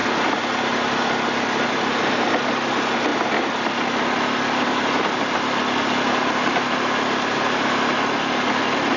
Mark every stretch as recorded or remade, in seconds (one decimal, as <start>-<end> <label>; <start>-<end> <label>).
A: 0.0-9.0 recorded